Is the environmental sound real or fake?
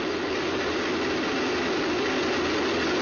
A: real